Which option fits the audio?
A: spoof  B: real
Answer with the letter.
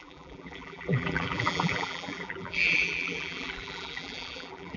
A